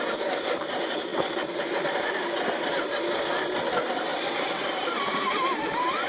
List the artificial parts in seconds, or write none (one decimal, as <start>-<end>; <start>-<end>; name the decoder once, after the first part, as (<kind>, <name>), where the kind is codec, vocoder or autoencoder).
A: 4.1-6.1 (vocoder, BigVGAN v2)